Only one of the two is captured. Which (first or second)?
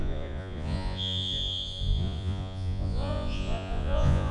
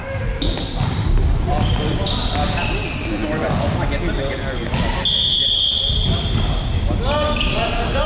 second